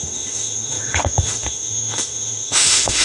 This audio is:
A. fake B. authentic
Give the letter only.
A